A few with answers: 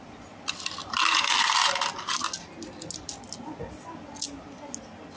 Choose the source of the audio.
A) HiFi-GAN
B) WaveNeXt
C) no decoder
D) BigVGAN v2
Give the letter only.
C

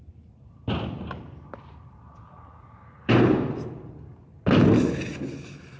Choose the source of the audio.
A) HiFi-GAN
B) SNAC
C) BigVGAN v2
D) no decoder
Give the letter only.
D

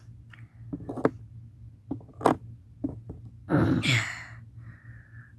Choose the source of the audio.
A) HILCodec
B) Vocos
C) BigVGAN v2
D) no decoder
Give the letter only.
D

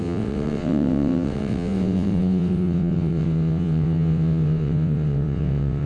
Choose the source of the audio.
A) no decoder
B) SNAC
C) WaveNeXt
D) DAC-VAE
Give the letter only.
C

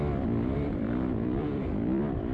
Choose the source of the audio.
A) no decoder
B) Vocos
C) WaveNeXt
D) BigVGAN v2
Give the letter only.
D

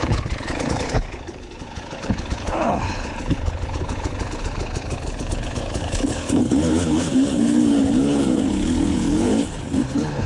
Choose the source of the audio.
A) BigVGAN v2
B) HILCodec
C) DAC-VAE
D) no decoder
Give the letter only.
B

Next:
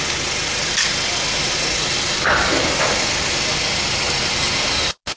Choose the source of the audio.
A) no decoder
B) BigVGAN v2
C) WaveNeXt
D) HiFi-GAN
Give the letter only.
A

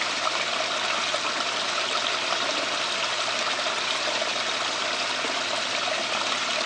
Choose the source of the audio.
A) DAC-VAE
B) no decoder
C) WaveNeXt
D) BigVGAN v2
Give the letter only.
B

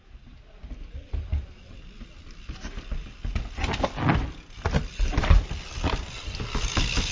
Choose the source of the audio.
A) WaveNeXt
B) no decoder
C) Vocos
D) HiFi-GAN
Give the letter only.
B